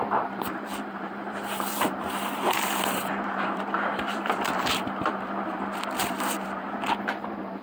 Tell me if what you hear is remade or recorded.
remade